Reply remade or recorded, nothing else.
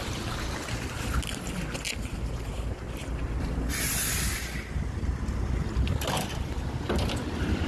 recorded